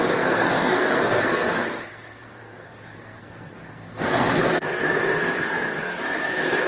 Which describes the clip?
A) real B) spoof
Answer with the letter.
B